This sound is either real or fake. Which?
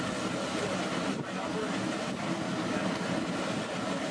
real